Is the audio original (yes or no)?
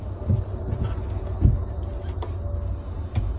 yes